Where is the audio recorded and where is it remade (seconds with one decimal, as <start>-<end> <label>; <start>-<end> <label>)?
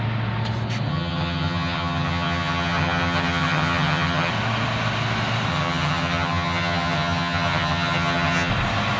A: 0.0-0.9 recorded; 0.9-4.3 remade; 4.3-5.5 recorded; 5.5-8.5 remade; 8.5-9.0 recorded